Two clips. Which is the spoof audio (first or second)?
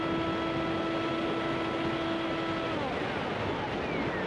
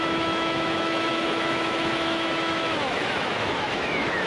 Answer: second